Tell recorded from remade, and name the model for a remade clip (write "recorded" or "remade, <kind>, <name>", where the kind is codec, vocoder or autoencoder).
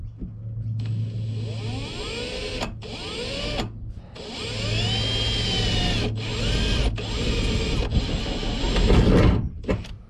recorded